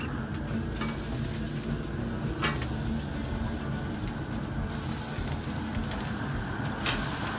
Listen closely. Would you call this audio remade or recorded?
recorded